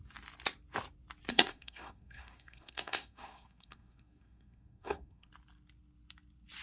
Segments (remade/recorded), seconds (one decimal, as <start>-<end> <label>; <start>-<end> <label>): 0.0-1.3 recorded; 1.3-5.3 remade; 5.3-6.6 recorded